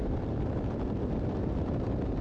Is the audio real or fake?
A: fake